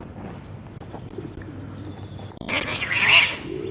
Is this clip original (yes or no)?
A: yes